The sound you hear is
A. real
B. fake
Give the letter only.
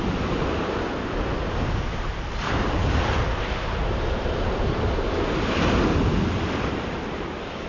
A